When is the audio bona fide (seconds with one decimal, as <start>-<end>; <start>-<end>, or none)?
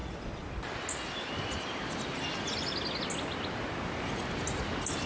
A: 1.3-5.1